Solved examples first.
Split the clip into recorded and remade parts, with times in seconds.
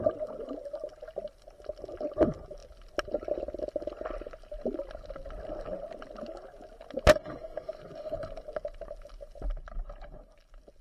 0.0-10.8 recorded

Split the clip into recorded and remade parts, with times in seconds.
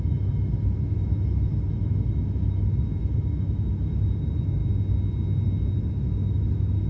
0.0-4.6 remade; 4.6-5.7 recorded; 5.7-6.9 remade